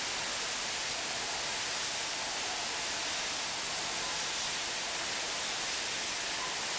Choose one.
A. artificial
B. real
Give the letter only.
B